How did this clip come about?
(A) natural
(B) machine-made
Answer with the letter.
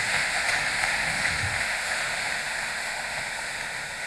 B